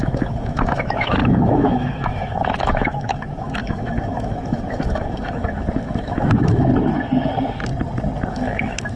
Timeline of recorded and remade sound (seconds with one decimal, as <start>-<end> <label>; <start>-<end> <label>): 0.0-6.7 remade; 6.7-8.3 recorded; 8.3-9.0 remade